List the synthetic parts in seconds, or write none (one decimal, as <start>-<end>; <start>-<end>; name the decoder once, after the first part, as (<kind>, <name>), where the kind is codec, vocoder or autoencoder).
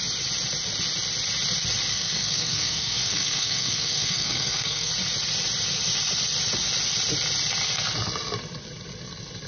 1.9-4.9 (codec, SNAC)